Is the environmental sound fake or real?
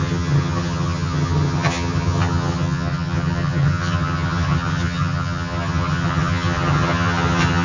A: fake